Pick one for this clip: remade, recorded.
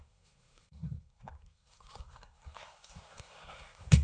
remade